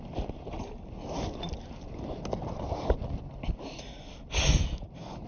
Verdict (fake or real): real